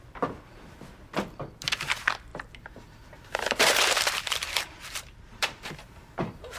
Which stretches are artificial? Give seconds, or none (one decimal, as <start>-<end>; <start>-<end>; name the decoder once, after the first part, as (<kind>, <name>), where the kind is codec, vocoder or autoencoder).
2.3-6.6 (vocoder, BigVGAN v2)